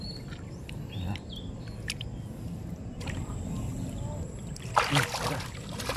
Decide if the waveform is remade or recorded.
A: recorded